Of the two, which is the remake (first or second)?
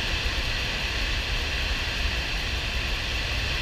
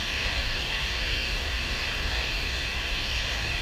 second